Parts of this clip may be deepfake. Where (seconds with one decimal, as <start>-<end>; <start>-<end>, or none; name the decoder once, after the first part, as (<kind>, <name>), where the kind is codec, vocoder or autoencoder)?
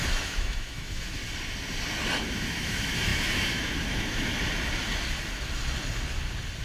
0.0-1.2 (autoencoder, DAC-VAE); 2.2-4.3